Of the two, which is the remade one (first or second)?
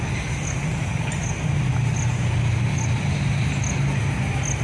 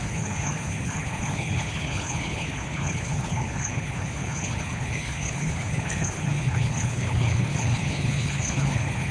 second